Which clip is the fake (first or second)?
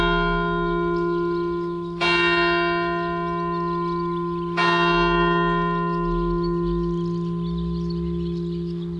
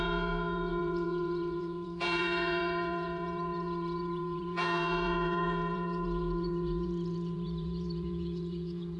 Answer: second